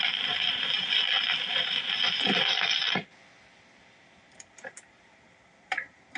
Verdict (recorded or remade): remade